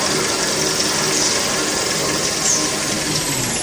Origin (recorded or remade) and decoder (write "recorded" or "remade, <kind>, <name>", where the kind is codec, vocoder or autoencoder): recorded